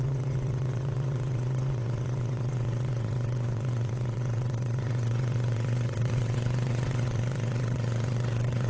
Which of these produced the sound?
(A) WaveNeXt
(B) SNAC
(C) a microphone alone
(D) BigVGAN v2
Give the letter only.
A